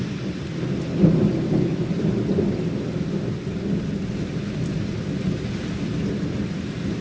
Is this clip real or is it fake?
real